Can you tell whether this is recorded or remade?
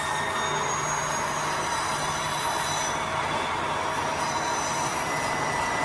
recorded